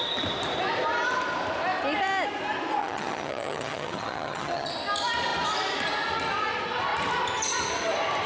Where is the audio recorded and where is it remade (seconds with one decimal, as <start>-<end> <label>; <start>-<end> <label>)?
0.0-2.8 recorded; 2.8-4.7 remade; 4.7-8.3 recorded